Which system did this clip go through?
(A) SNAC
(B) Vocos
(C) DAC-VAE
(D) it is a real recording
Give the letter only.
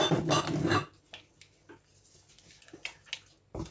D